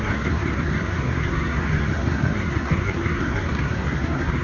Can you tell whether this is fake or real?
fake